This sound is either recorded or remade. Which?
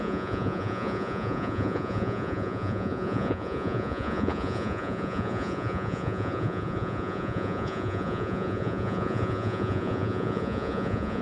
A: remade